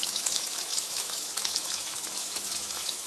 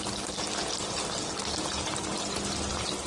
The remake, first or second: first